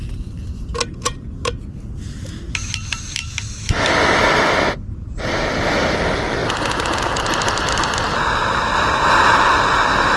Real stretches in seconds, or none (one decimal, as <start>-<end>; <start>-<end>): 0.0-3.2; 3.9-10.2